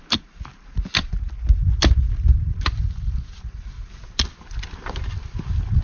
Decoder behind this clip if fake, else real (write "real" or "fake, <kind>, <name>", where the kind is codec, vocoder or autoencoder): real